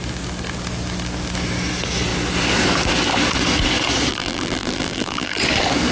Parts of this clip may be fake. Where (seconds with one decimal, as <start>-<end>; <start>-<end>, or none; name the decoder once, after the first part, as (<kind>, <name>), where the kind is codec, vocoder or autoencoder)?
4.1-5.4 (vocoder, BigVGAN v2)